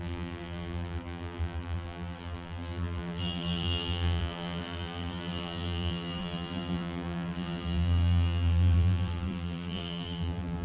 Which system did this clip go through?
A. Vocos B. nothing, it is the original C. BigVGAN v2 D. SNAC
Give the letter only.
C